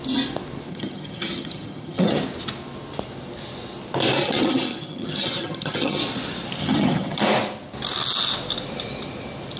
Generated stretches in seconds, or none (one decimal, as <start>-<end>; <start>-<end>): 0.7-2.2; 4.2-6.0; 6.6-7.2